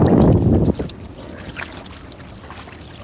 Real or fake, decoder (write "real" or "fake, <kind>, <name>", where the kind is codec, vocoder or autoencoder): real